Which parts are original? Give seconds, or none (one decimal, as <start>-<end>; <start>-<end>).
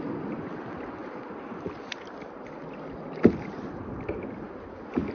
0.0-1.0; 2.3-5.1